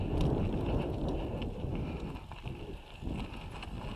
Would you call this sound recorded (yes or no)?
yes